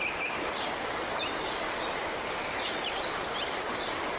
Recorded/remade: recorded